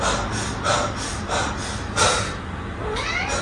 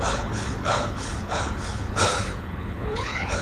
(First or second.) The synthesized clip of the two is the second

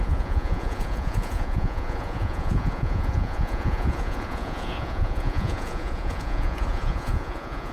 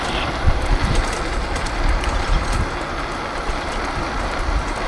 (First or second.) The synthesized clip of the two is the first